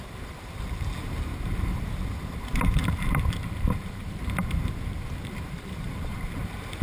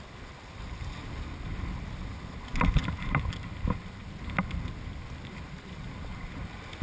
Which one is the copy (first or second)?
first